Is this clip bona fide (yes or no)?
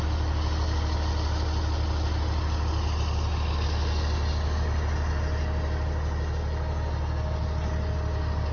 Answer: yes